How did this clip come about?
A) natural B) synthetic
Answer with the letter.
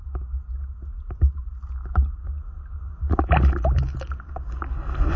A